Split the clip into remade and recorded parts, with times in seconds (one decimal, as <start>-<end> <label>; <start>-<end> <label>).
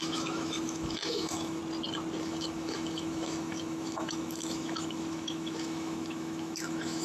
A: 0.0-1.6 remade; 1.6-2.2 recorded; 2.2-7.0 remade